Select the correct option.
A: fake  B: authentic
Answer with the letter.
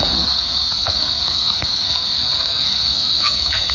A